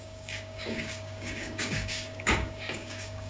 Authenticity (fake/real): fake